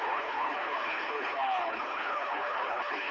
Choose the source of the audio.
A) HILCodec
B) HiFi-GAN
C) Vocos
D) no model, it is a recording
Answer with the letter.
A